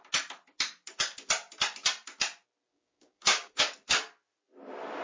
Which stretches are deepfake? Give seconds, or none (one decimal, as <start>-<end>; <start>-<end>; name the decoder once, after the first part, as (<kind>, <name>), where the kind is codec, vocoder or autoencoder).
2.7-3.6 (codec, DAC)